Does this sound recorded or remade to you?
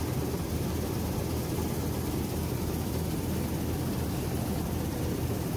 remade